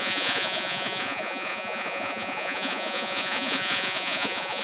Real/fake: fake